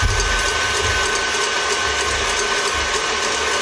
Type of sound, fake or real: real